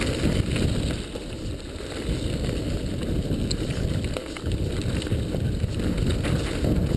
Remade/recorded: recorded